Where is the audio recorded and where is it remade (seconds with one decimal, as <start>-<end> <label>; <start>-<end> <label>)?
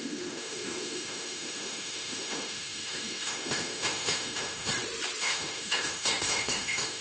0.0-4.7 remade; 4.7-5.2 recorded; 5.2-7.0 remade